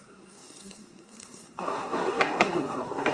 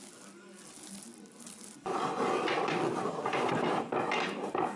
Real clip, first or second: second